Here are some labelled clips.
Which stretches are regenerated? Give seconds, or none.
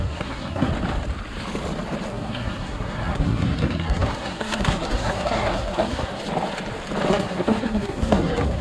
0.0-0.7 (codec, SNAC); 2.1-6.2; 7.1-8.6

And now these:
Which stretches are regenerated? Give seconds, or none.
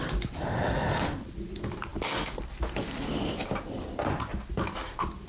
none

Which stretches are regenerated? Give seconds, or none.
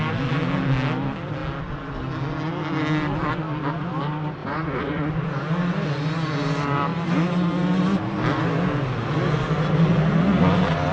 4.4-5.1 (vocoder, Vocos)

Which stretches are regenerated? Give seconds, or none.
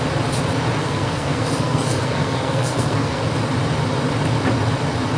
0.8-3.2 (codec, SNAC)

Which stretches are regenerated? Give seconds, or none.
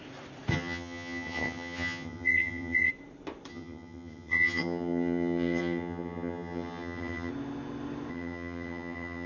0.5-2.9 (vocoder, HiFi-GAN); 3.5-7.3; 8.1-9.3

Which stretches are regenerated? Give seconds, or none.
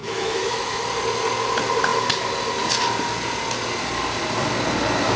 0.0-0.8 (autoencoder, DAC-VAE)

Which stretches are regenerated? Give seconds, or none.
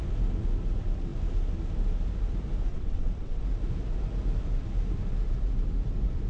2.7-3.4 (vocoder, WaveNeXt)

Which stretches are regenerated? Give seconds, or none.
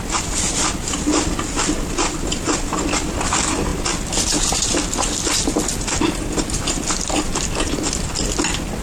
0.0-8.8 (vocoder, BigVGAN v2)